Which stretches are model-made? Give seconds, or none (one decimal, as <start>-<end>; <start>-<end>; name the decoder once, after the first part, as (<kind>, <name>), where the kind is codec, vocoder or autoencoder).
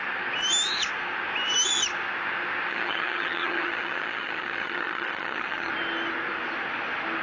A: 2.7-5.7 (vocoder, HiFi-GAN)